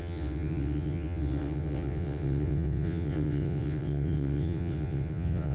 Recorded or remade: remade